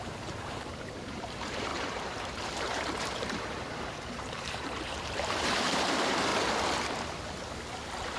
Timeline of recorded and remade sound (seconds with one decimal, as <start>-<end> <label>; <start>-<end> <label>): 0.0-6.3 remade; 6.3-8.2 recorded